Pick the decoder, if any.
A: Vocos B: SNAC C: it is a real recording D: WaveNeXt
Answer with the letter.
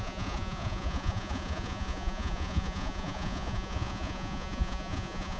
A